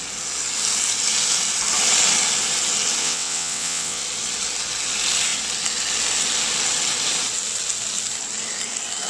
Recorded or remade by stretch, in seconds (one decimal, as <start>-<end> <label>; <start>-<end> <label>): 0.0-3.0 recorded; 3.0-4.0 remade; 4.0-9.1 recorded